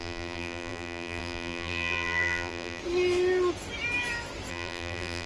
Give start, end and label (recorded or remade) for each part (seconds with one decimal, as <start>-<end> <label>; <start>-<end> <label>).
0.0-2.8 remade; 2.8-4.5 recorded; 4.5-5.3 remade